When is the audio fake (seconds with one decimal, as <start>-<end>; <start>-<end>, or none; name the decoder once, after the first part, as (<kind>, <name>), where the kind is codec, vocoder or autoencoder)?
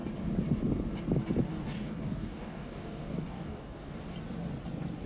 1.5-3.9 (codec, DAC)